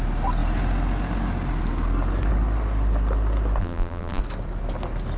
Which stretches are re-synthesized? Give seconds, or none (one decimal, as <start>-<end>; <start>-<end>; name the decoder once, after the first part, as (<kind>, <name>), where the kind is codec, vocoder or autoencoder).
3.6-4.2 (vocoder, BigVGAN v2)